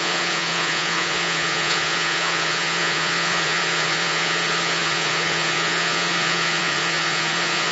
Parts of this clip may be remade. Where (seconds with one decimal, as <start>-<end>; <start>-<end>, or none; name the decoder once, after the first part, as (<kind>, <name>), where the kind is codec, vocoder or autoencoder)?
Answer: 0.0-7.7 (vocoder, Vocos)